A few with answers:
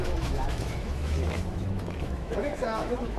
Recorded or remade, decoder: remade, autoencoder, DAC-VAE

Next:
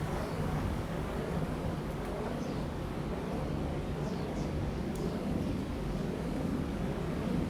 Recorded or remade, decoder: remade, codec, DAC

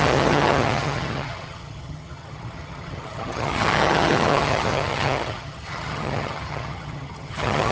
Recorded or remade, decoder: remade, vocoder, HiFi-GAN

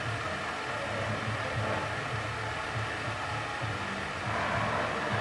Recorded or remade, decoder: recorded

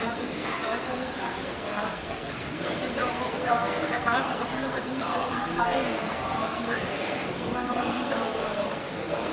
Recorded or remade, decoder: remade, codec, SNAC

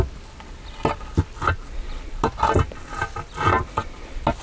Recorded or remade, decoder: recorded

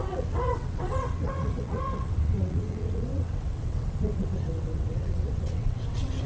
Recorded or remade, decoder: remade, vocoder, WaveNeXt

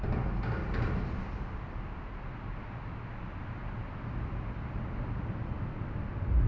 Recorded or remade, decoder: recorded